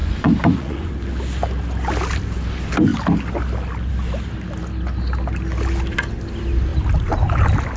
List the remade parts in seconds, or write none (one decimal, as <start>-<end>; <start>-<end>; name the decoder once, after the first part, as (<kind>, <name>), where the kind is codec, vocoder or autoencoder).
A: 0.0-0.9 (vocoder, Vocos)